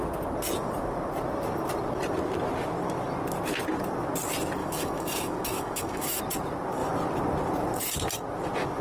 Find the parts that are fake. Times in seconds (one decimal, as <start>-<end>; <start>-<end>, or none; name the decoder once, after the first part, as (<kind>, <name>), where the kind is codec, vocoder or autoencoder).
4.6-6.2 (autoencoder, DAC-VAE)